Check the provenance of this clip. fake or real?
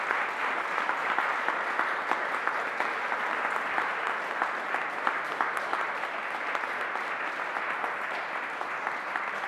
real